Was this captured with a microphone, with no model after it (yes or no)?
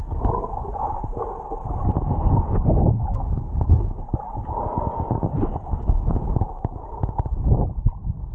yes